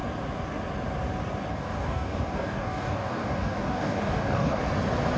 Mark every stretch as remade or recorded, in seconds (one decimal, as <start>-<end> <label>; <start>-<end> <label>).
0.0-1.5 recorded; 1.5-4.6 remade; 4.6-5.2 recorded